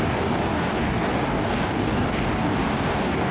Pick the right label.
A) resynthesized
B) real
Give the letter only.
A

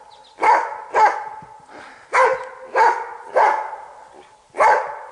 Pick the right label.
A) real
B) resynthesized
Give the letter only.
A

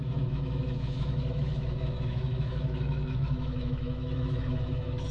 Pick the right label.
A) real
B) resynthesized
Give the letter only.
B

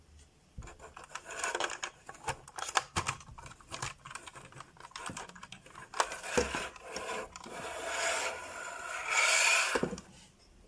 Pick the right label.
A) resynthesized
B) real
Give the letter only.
B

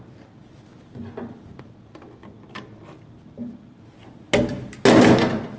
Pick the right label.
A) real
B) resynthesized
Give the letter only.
A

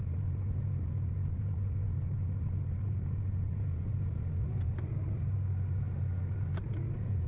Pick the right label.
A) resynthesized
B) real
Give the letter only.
B